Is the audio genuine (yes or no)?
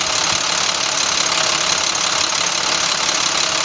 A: yes